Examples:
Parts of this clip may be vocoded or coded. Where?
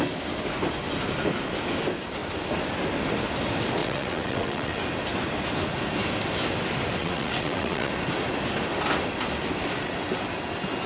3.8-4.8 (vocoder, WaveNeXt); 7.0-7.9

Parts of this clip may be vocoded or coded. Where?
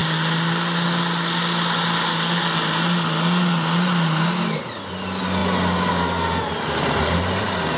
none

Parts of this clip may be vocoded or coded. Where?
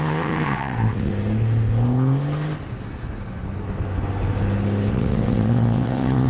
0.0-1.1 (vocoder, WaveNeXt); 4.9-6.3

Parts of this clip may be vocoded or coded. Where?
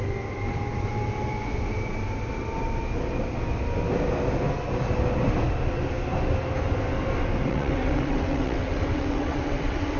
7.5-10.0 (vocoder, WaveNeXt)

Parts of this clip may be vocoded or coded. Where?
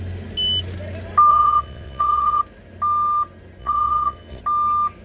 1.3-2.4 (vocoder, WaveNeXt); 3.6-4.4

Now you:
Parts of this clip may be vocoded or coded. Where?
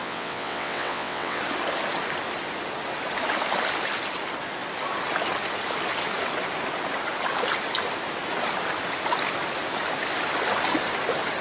0.0-1.4 (vocoder, WaveNeXt)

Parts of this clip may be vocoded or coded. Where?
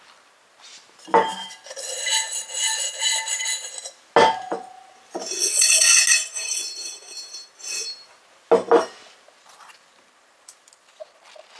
5.4-6.0 (vocoder, WaveNeXt)